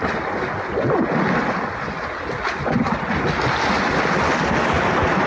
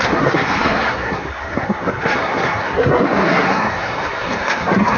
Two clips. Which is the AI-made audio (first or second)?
second